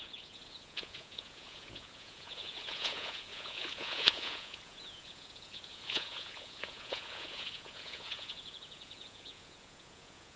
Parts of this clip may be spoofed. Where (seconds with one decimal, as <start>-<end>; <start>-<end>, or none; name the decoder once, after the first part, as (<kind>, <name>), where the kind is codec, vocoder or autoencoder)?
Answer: 0.0-10.4 (vocoder, Vocos)